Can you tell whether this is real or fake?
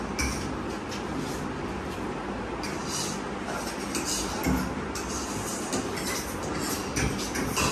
real